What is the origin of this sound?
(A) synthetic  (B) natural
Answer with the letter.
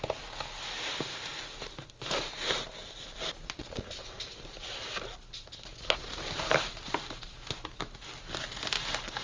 B